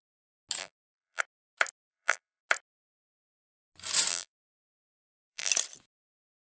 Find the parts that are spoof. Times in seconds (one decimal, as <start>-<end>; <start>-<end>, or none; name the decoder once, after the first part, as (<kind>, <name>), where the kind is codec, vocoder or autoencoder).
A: 0.6-1.2 (vocoder, BigVGAN v2); 1.9-2.4; 4.1-5.5